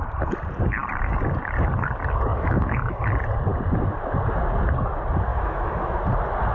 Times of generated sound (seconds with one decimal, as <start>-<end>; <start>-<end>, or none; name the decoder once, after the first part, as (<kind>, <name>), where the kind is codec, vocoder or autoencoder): 2.3-3.0 (autoencoder, DAC-VAE); 5.3-6.0